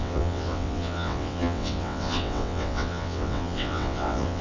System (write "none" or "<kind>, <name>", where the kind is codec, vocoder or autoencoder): vocoder, WaveNeXt